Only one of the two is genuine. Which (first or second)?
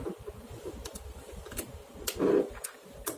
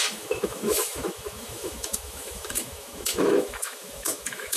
first